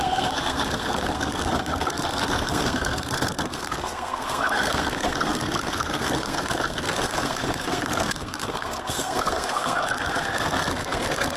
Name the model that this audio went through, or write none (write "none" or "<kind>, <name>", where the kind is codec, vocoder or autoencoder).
codec, SNAC